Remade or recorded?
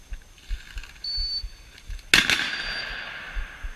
recorded